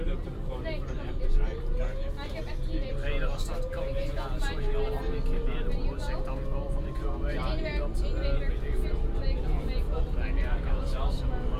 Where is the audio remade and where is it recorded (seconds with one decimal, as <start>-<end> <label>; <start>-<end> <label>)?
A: 0.0-11.6 recorded